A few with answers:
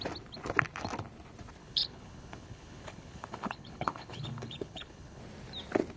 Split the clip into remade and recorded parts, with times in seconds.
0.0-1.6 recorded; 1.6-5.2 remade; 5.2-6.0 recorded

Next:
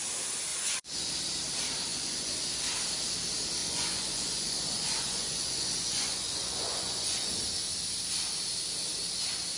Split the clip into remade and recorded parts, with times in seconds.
0.0-0.5 recorded; 0.5-1.1 remade; 1.1-1.9 recorded; 1.9-2.6 remade; 2.6-3.6 recorded; 3.6-7.4 remade; 7.4-9.6 recorded

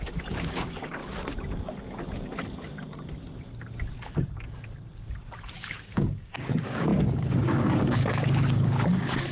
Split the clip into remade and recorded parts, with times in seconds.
0.0-1.0 remade; 1.0-5.5 recorded; 5.5-9.3 remade

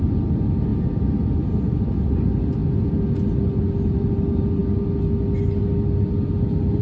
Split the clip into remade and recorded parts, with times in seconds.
0.0-6.8 recorded

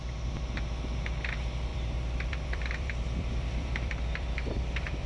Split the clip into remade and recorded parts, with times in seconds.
0.0-1.7 recorded; 1.7-5.1 remade